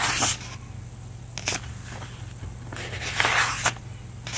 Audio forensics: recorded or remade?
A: recorded